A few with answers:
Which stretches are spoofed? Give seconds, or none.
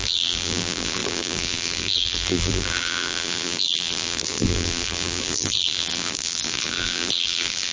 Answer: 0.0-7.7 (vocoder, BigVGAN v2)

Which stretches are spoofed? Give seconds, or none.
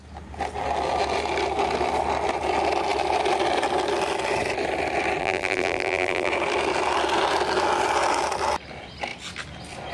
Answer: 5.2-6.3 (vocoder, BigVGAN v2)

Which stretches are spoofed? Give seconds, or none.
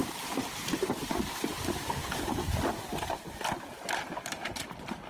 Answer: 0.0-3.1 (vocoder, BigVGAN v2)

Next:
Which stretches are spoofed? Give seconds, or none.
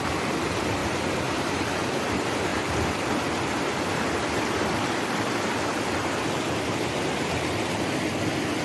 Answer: 0.8-1.6 (vocoder, BigVGAN v2); 6.0-7.7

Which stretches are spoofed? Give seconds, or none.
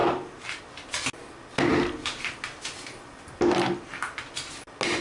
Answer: none